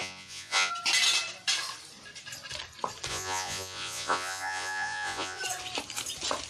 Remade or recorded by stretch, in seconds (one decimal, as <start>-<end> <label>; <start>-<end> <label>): 0.0-0.7 remade; 0.7-3.1 recorded; 3.1-5.4 remade; 5.4-6.5 recorded